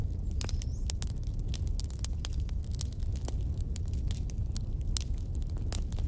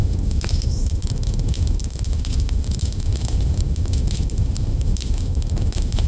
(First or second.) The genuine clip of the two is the first